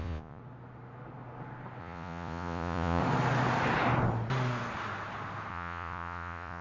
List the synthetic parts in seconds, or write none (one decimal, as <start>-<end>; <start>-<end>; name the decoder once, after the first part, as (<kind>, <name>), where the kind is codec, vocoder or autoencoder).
0.0-0.4 (vocoder, Vocos); 1.8-3.0; 5.5-6.6